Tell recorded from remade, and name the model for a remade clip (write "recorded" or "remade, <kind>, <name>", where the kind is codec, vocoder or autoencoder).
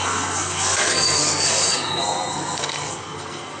remade, codec, SNAC